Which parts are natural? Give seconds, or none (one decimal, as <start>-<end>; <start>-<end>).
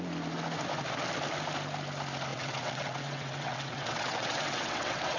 0.0-2.3